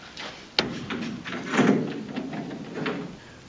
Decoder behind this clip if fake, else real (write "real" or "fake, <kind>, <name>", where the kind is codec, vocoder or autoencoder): real